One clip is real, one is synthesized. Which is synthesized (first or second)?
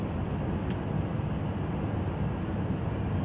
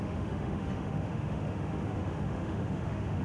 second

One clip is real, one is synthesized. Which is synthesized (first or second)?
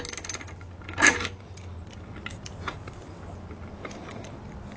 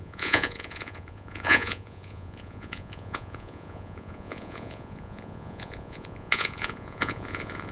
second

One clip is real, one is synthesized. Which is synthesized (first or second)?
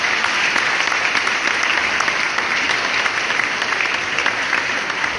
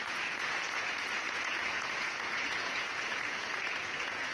second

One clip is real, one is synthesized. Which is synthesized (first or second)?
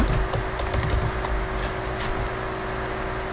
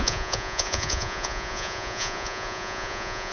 second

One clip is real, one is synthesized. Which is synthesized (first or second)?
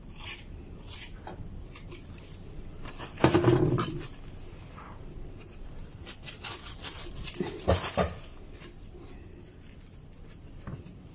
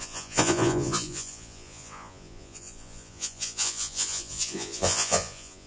second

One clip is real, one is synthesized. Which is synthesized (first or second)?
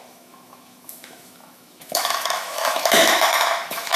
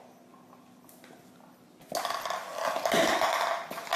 first